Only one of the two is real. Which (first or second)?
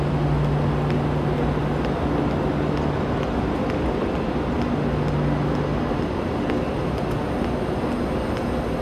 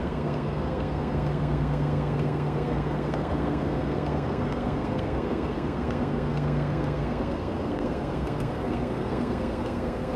first